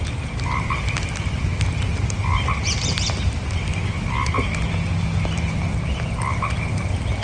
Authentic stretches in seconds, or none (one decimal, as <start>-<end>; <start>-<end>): 3.7-5.8